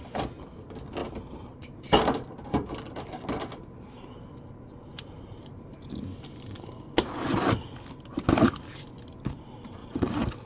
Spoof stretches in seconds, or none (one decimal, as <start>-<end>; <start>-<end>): 1.0-3.2; 4.9-5.6; 9.8-10.5